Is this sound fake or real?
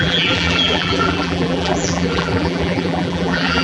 fake